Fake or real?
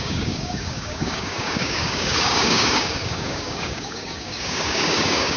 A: fake